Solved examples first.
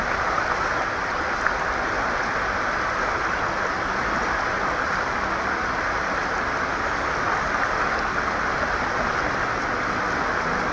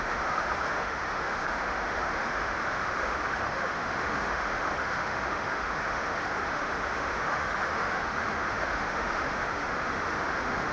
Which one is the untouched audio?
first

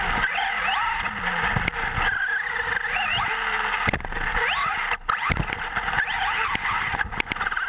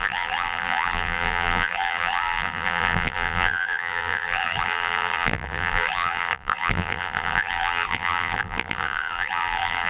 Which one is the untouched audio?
first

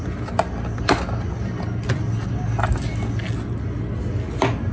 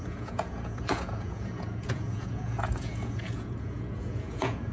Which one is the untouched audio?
first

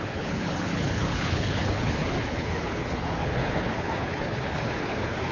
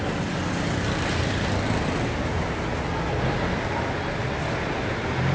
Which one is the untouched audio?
second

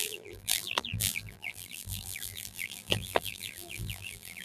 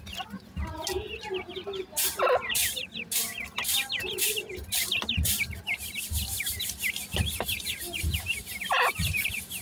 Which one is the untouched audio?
second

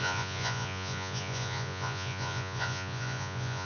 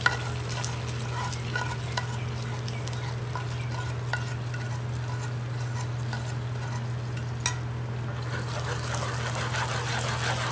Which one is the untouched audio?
second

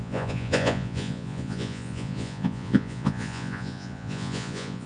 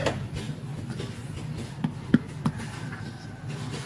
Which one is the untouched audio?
second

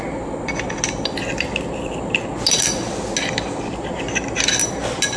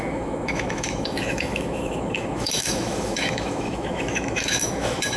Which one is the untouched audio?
first